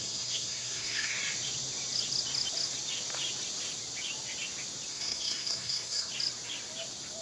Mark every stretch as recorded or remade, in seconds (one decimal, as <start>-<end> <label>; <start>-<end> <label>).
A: 0.0-1.2 remade; 1.2-4.9 recorded; 4.9-6.1 remade; 6.1-7.2 recorded